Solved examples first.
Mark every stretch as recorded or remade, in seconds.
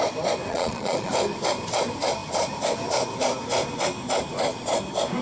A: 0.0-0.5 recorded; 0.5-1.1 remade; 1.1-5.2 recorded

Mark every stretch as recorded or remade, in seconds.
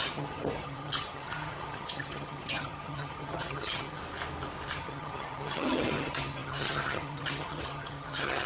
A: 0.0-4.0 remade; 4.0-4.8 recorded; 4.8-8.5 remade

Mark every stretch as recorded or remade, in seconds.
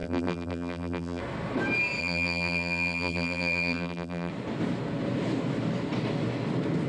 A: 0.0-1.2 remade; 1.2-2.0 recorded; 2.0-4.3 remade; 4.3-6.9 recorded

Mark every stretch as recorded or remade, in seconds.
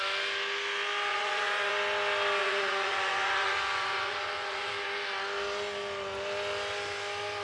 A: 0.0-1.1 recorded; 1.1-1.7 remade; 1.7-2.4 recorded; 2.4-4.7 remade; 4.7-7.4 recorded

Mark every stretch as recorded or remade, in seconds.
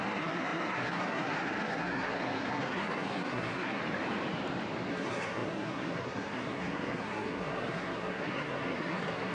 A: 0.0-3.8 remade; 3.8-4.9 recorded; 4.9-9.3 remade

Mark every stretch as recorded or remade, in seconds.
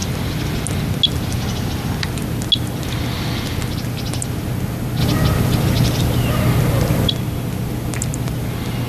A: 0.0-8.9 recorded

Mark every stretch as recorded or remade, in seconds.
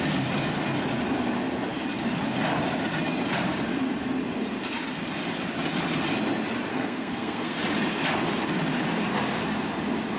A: 0.0-6.7 recorded; 6.7-7.6 remade; 7.6-10.2 recorded